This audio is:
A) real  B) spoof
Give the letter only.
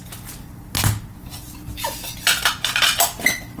A